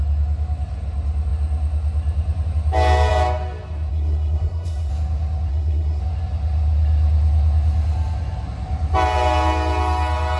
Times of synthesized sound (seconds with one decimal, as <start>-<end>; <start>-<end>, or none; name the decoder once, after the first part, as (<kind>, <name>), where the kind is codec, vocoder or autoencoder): 3.9-4.9 (codec, SNAC); 5.5-6.0